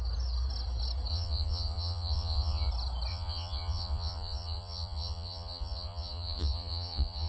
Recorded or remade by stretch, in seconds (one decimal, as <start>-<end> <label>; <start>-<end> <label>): 0.0-1.1 recorded; 1.1-2.7 remade; 2.7-3.1 recorded; 3.1-7.3 remade